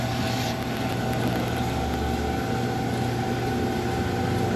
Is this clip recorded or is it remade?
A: recorded